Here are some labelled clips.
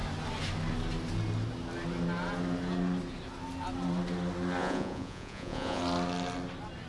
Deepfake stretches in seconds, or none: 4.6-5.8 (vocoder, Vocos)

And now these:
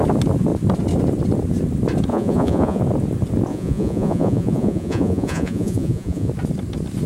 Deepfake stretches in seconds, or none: 2.1-2.8 (vocoder, Vocos); 3.5-6.3